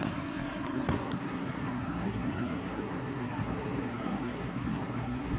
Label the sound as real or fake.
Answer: fake